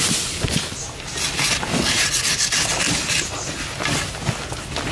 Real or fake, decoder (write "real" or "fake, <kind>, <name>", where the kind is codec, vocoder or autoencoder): real